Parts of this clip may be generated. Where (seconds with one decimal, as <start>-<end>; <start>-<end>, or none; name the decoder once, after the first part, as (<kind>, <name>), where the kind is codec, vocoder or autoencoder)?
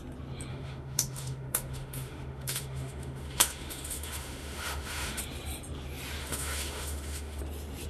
0.5-5.2 (autoencoder, DAC-VAE); 6.2-7.4